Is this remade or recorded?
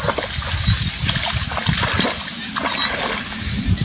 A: recorded